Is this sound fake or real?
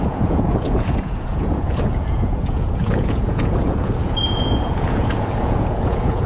fake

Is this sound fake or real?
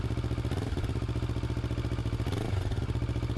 real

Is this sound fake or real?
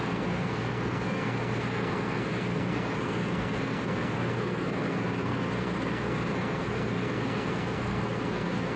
fake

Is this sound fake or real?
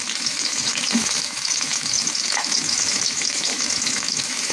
fake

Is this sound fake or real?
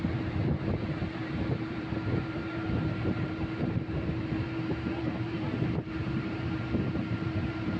fake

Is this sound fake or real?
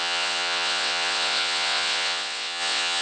fake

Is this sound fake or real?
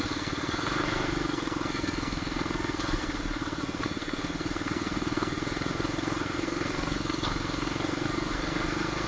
fake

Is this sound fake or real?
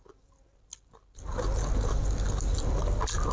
real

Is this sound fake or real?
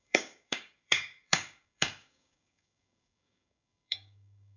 fake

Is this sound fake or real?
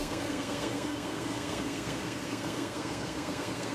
fake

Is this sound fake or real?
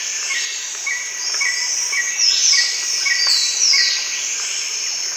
real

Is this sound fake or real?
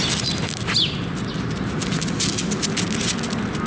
real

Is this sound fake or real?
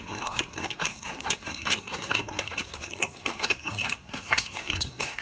fake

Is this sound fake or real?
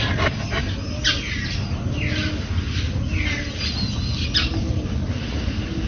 real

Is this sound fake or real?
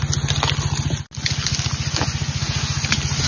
real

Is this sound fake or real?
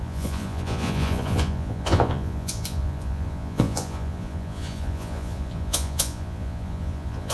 fake